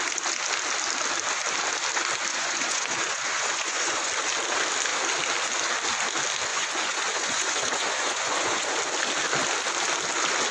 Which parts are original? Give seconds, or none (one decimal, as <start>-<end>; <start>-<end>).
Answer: 0.0-2.3; 4.1-6.5; 8.7-10.5